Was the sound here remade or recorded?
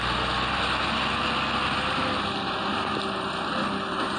recorded